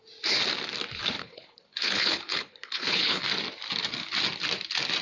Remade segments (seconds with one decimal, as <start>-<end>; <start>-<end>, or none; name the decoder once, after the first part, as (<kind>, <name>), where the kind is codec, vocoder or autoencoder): 1.2-3.2 (codec, HILCodec)